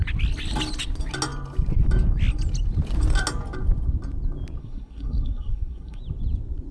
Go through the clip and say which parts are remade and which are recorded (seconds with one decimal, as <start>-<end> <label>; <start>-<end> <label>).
0.0-4.6 recorded; 4.6-6.0 remade; 6.0-6.7 recorded